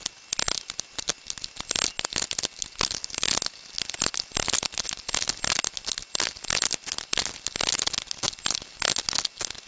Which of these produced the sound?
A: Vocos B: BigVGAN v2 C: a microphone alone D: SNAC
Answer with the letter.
C